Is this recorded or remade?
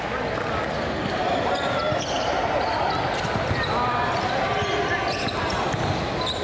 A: recorded